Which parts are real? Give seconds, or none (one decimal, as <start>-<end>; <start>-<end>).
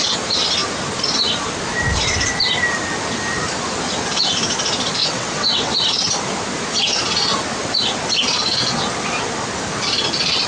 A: 0.0-5.0; 5.7-10.5